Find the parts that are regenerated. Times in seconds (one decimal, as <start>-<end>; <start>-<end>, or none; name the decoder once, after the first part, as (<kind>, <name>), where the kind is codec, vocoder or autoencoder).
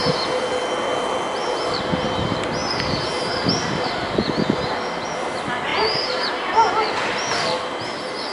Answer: 0.0-0.5 (vocoder, BigVGAN v2); 5.7-6.7